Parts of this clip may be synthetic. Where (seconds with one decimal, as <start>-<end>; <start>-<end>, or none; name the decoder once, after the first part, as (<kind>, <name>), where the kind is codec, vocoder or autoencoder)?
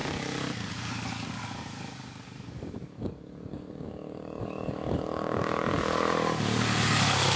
0.0-7.4 (codec, DAC)